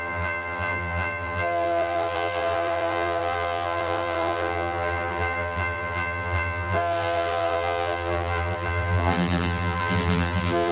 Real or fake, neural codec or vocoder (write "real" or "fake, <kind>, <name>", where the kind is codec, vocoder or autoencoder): fake, vocoder, BigVGAN v2